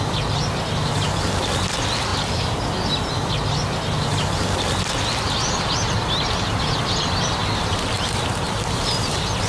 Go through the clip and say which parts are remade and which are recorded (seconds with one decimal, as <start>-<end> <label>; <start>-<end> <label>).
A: 0.0-9.5 recorded